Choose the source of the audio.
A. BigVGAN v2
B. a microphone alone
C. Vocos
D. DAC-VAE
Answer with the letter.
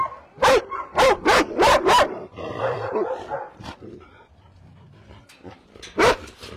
A